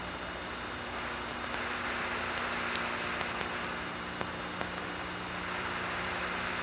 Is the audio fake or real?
real